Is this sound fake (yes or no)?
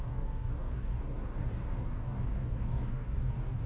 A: yes